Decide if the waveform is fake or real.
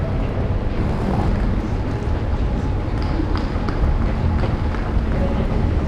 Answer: real